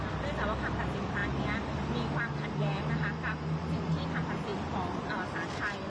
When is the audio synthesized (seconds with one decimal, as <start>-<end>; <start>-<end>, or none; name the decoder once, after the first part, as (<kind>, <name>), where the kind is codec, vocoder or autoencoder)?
none